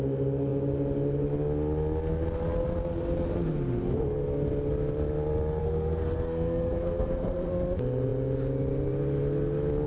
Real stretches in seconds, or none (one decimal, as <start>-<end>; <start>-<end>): 0.0-5.6; 7.5-9.9